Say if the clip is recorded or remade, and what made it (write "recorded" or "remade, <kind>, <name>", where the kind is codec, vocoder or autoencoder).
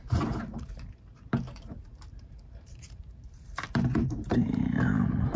remade, vocoder, BigVGAN v2